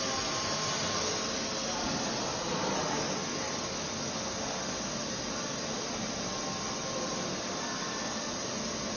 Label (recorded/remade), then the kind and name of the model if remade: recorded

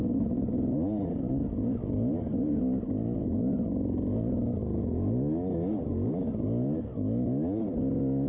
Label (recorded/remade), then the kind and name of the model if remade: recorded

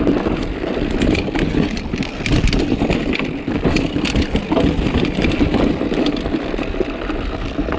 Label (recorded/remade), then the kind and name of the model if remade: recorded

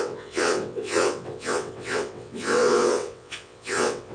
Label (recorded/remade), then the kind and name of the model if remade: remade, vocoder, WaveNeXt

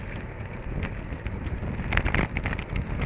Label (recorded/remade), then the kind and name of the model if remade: recorded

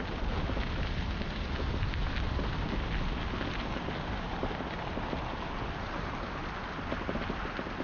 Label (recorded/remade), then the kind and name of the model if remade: recorded